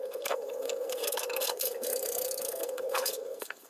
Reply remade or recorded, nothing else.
remade